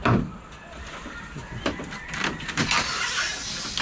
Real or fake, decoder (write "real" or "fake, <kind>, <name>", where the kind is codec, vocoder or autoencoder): real